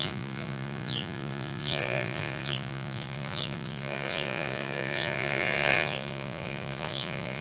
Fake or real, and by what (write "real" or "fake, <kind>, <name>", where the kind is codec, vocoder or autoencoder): fake, vocoder, Vocos